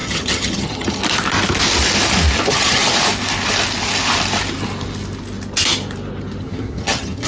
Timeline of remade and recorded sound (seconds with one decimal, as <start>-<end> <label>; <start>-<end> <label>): 0.0-1.0 remade; 1.0-2.5 recorded; 2.5-2.9 remade; 2.9-6.4 recorded; 6.4-7.3 remade